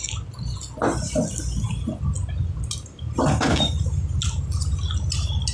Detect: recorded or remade recorded